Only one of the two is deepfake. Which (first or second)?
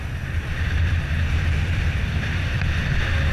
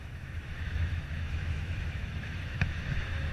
second